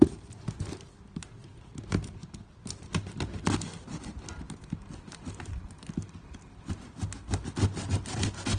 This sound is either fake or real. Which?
real